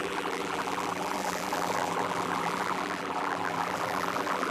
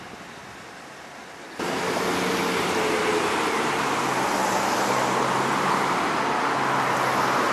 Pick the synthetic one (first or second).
first